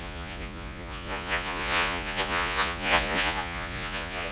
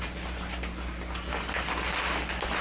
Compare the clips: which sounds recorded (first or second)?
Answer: second